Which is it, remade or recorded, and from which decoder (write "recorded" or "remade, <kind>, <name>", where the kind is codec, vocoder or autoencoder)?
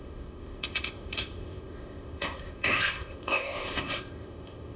remade, codec, ZipCodec